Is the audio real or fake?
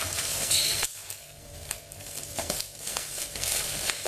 fake